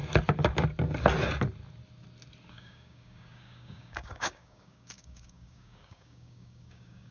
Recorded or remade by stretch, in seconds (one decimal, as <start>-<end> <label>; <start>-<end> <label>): 0.0-2.5 recorded; 2.5-7.1 remade

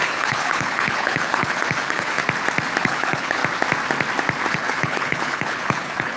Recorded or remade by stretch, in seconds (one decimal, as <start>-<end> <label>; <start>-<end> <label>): 0.0-2.2 remade; 2.2-2.8 recorded; 2.8-3.4 remade; 3.4-4.5 recorded; 4.5-6.2 remade

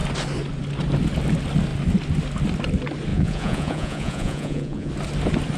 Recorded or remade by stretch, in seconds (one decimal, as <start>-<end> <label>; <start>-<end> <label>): 0.0-3.1 recorded; 3.1-4.9 remade; 4.9-5.6 recorded